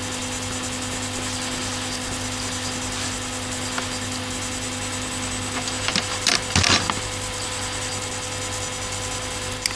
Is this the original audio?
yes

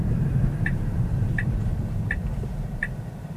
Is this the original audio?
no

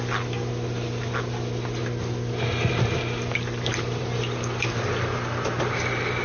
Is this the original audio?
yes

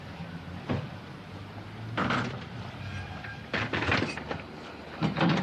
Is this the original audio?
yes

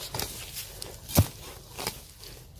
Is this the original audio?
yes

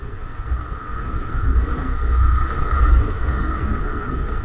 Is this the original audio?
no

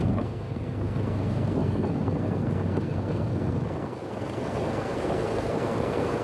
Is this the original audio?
no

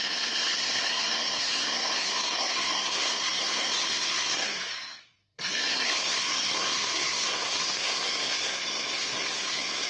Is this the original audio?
no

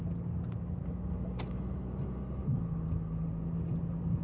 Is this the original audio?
yes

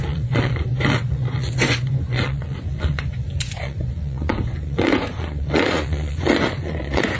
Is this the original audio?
no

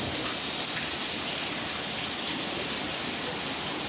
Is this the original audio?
yes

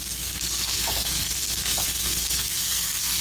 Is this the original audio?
no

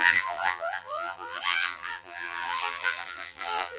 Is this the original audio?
no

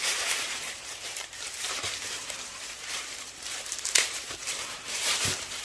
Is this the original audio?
no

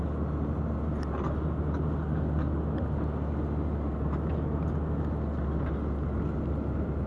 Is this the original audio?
yes